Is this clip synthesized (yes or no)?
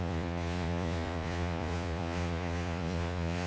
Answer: yes